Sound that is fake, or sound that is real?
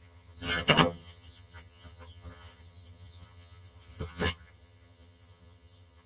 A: fake